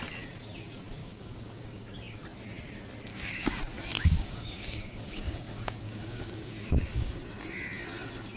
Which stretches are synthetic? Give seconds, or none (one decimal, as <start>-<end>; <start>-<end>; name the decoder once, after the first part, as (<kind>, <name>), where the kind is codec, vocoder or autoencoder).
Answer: 1.0-2.2 (codec, DAC); 3.1-3.6; 4.0-7.2